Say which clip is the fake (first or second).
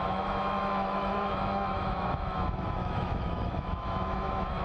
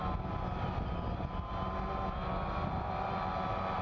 first